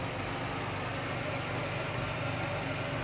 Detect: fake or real real